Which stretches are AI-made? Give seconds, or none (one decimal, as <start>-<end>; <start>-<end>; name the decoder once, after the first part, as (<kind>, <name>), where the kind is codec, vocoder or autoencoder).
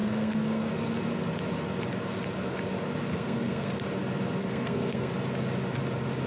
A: 0.0-0.7 (codec, SNAC); 3.1-3.7; 4.4-5.1